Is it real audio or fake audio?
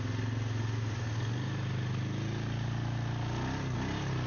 real